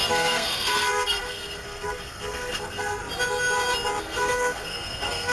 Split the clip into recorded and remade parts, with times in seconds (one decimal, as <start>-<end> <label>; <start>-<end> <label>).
0.0-3.0 remade; 3.0-4.0 recorded; 4.0-5.3 remade